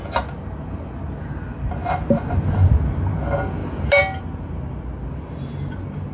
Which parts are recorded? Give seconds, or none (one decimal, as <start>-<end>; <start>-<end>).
0.0-6.1